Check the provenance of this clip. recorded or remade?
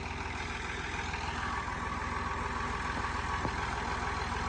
recorded